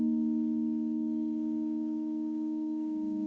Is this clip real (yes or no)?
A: no